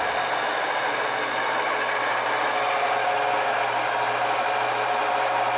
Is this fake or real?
real